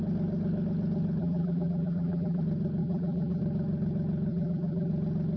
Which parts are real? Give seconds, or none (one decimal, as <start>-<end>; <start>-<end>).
0.0-1.2; 2.4-2.8; 3.4-4.3; 4.9-5.4